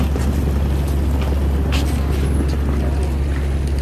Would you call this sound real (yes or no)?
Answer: yes